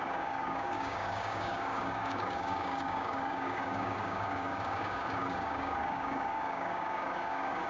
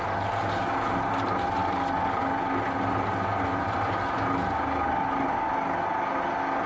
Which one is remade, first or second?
first